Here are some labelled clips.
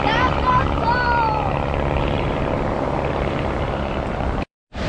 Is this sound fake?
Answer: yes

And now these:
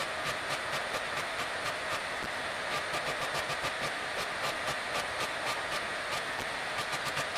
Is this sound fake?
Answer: no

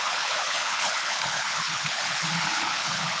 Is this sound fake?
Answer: yes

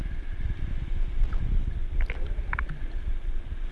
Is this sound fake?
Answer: no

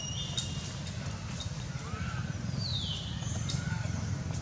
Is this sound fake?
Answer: no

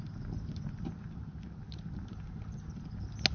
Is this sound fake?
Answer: no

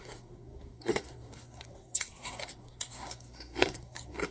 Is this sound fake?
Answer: yes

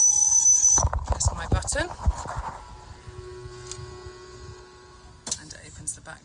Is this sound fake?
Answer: no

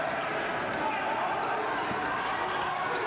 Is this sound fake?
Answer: no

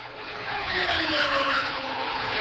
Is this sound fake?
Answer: yes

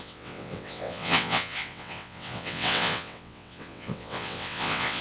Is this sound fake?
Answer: yes